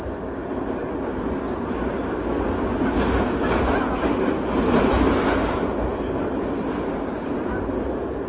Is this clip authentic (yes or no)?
yes